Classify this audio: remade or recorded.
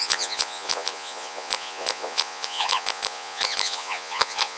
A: remade